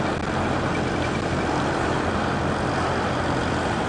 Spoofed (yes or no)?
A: no